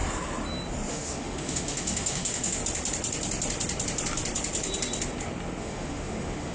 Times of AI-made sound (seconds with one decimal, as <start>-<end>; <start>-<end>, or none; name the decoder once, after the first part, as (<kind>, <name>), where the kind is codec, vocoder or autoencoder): 0.9-2.6 (autoencoder, DAC-VAE); 5.6-6.5